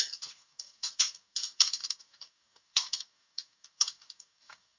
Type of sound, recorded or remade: remade